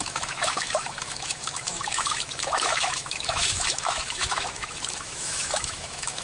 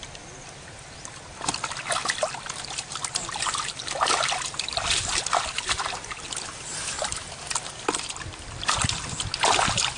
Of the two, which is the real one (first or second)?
second